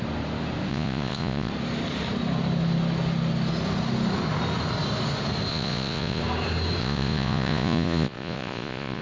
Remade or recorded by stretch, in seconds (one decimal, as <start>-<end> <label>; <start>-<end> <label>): 0.0-0.7 recorded; 0.7-1.5 remade; 1.5-5.5 recorded; 5.5-6.2 remade; 6.2-6.8 recorded; 6.8-9.0 remade